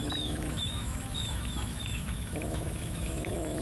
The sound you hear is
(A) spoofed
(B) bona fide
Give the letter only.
A